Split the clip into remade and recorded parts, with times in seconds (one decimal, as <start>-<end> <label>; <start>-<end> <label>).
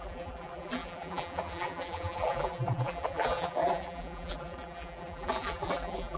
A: 0.0-6.2 remade